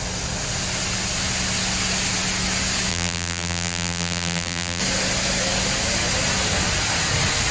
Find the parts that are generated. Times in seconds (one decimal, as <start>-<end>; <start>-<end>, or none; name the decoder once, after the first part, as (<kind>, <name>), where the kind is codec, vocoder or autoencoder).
2.9-4.8 (vocoder, BigVGAN v2)